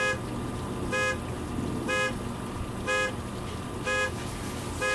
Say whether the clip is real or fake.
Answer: real